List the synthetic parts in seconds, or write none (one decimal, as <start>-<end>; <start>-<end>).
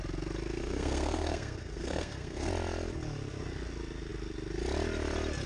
0.6-2.5